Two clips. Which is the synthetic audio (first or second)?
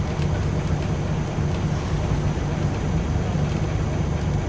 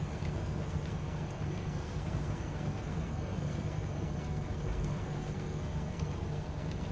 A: second